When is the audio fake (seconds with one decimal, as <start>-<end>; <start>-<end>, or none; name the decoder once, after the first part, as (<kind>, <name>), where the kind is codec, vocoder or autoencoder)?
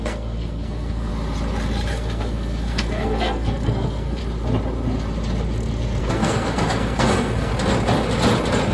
0.0-1.1 (codec, SNAC); 1.9-4.2; 6.0-7.5